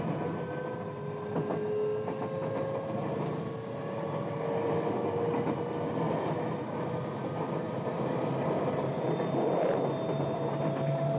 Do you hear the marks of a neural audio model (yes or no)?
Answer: no